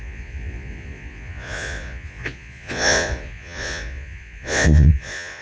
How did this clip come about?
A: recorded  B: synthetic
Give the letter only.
B